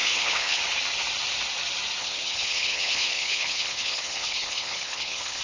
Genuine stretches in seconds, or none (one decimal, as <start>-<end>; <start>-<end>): 0.6-2.0